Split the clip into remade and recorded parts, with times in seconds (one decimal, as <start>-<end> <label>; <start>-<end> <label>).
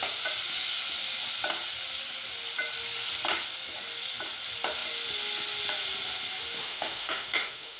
0.0-6.6 recorded; 6.6-7.8 remade